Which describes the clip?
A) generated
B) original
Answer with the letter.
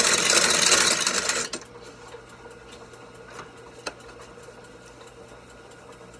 B